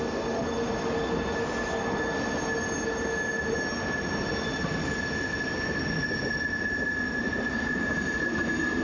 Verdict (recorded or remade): recorded